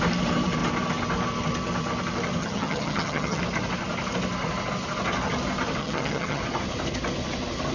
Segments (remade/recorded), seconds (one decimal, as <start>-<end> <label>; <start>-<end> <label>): 0.0-2.4 recorded; 2.4-3.4 remade; 3.4-5.8 recorded; 5.8-6.4 remade; 6.4-7.7 recorded